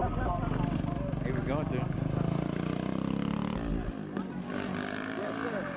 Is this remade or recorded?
recorded